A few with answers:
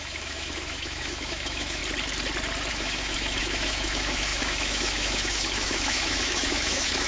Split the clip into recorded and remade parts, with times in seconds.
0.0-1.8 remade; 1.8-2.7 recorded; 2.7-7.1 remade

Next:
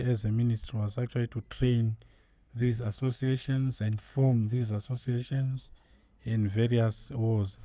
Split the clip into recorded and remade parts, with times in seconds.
0.0-1.5 recorded; 1.5-6.0 remade; 6.0-7.6 recorded

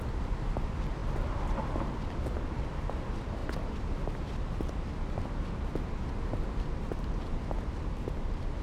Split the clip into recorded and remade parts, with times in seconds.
0.0-8.6 recorded

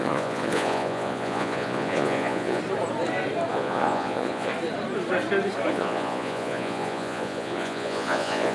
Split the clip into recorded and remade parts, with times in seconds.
0.0-2.6 remade; 2.6-3.5 recorded; 3.5-4.5 remade; 4.5-5.7 recorded; 5.7-8.5 remade

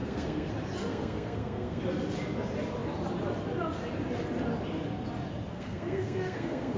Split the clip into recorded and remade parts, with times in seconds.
0.0-0.5 remade; 0.5-0.9 recorded; 0.9-1.8 remade; 1.8-5.5 recorded; 5.5-6.8 remade